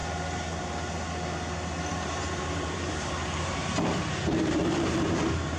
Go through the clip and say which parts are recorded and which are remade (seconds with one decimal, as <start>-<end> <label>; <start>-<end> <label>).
0.0-1.9 recorded; 1.9-5.6 remade